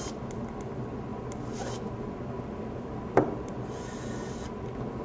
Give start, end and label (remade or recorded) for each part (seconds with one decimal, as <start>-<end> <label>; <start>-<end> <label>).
0.0-5.0 recorded